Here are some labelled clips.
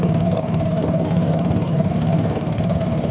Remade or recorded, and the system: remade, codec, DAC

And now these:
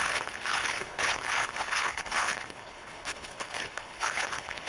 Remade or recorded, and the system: remade, codec, HILCodec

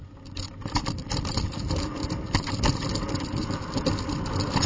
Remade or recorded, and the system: recorded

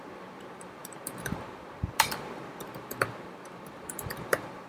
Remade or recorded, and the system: remade, vocoder, BigVGAN v2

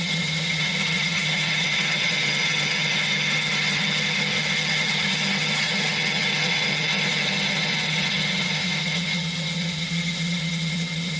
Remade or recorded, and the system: remade, vocoder, HiFi-GAN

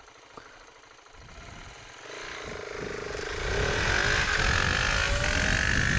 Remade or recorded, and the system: recorded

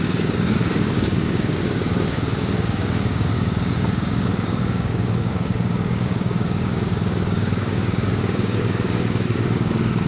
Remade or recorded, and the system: remade, codec, DAC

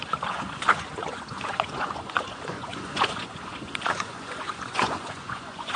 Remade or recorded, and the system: remade, vocoder, Vocos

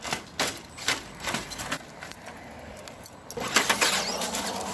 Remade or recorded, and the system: recorded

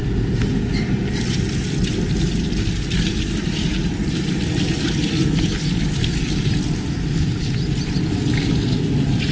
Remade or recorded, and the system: recorded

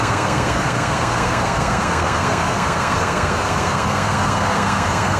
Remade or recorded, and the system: remade, codec, SNAC